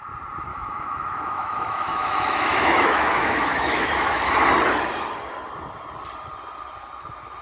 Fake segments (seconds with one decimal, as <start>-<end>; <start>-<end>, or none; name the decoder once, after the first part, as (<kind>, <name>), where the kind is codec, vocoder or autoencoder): 0.5-4.3 (autoencoder, DAC-VAE)